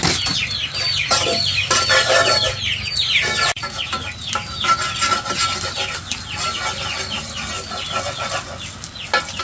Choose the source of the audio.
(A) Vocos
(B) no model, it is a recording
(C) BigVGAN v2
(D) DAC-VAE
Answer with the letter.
B